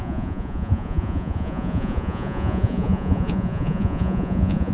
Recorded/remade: remade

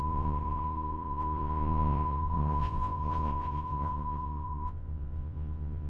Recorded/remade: remade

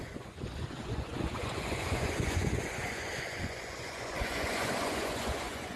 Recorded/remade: remade